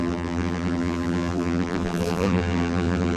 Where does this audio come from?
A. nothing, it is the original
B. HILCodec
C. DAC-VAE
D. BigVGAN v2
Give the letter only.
D